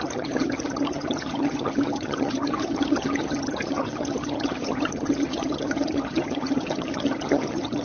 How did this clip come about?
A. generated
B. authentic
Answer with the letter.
A